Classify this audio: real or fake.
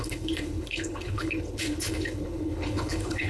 fake